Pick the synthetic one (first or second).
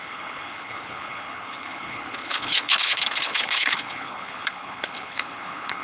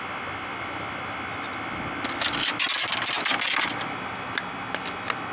first